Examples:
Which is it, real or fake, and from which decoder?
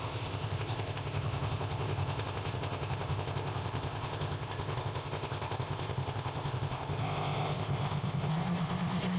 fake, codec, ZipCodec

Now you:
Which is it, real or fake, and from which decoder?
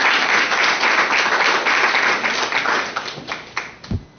real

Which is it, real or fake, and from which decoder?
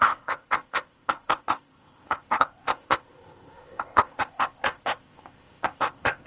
fake, codec, ZipCodec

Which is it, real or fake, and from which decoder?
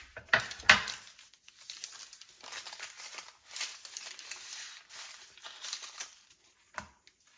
real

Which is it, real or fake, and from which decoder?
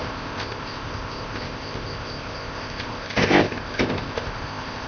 fake, codec, ZipCodec